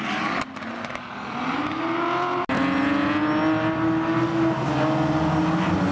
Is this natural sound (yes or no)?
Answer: yes